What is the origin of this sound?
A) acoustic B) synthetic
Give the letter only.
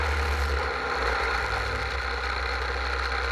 A